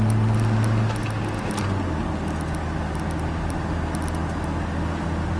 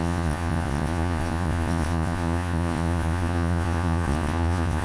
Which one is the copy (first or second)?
second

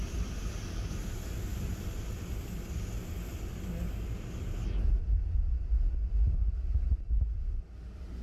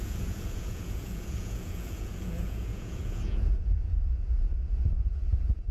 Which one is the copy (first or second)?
second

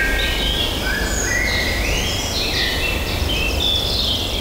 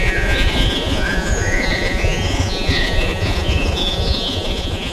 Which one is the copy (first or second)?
second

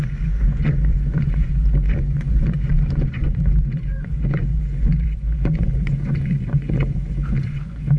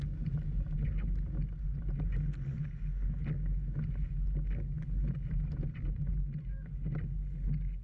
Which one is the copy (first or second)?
first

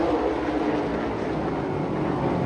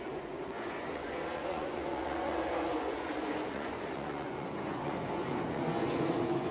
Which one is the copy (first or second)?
second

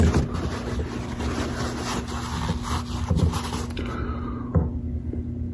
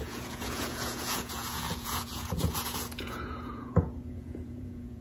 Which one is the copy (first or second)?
second